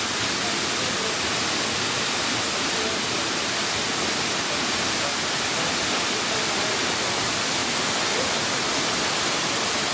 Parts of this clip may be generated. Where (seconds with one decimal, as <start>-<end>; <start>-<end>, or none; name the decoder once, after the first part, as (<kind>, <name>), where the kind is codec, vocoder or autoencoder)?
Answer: 7.6-9.2 (vocoder, BigVGAN v2)